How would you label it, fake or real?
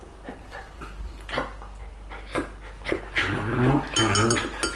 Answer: real